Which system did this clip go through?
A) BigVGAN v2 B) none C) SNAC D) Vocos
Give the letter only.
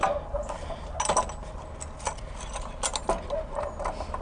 B